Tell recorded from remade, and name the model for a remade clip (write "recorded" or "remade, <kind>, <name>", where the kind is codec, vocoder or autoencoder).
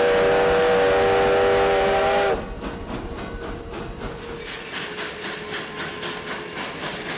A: recorded